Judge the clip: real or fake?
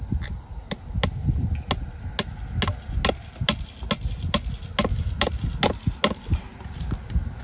real